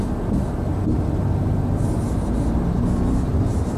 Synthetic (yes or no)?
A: no